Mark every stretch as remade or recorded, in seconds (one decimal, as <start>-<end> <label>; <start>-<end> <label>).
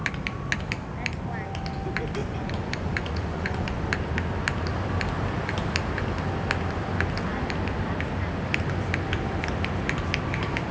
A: 0.0-2.2 recorded; 2.2-3.9 remade; 3.9-10.7 recorded